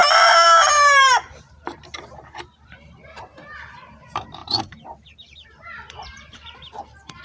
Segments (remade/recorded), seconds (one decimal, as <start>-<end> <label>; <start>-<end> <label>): 0.0-7.2 remade